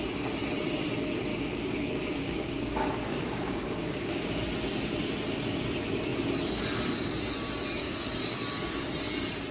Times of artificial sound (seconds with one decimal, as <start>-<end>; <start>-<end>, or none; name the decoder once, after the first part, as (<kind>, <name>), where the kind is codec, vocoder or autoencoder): 1.3-4.4 (codec, DAC); 7.8-8.9